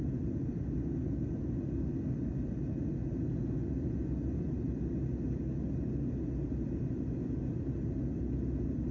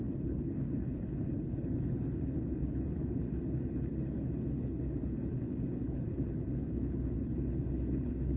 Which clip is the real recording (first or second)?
first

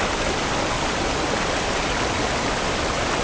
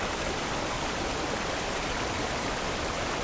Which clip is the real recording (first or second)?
first